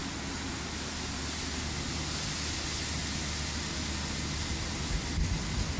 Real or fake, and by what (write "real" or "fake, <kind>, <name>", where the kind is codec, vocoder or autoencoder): real